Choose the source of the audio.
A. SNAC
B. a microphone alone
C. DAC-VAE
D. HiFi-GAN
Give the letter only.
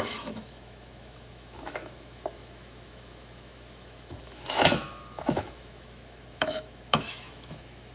C